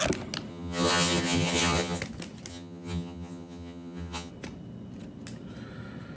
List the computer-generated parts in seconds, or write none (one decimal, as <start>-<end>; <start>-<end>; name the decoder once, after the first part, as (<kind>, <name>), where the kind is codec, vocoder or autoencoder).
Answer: 0.5-2.0 (vocoder, HiFi-GAN); 2.5-4.3